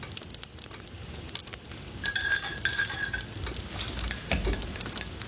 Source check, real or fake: real